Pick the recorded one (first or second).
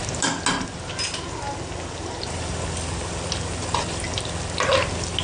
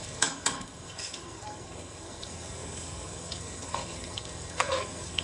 first